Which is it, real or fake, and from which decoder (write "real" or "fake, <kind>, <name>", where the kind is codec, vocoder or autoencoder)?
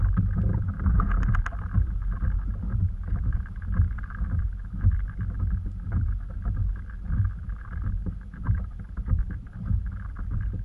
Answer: real